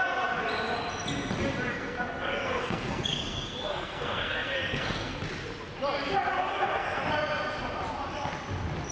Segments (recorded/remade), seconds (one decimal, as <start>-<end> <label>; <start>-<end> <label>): 0.0-1.7 recorded; 1.7-5.2 remade; 5.2-6.5 recorded; 6.5-7.0 remade; 7.0-8.9 recorded